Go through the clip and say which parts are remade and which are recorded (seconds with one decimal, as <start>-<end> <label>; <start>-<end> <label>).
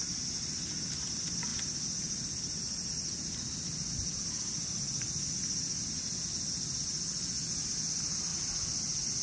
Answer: 0.0-8.3 recorded; 8.3-9.2 remade